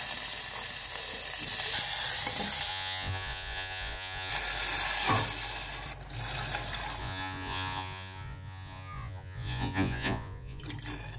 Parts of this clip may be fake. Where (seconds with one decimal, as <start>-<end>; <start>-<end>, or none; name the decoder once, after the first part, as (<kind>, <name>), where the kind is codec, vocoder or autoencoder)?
2.7-4.3 (vocoder, Vocos); 7.0-10.6